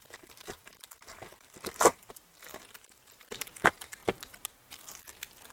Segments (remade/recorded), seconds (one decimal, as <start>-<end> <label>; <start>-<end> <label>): 0.0-4.0 remade; 4.0-5.5 recorded